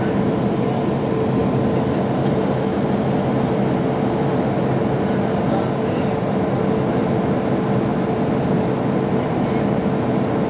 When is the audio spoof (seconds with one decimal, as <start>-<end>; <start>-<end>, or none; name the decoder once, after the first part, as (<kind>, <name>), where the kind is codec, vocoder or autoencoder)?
none